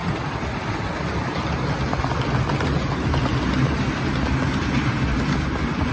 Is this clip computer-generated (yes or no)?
no